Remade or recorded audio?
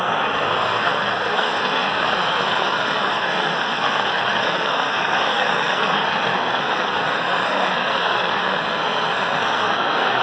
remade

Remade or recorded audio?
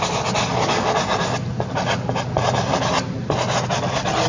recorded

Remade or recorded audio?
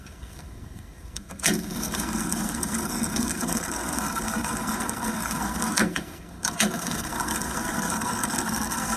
remade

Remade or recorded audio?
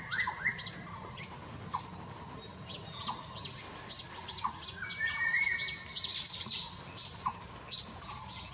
recorded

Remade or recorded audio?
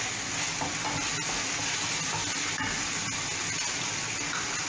recorded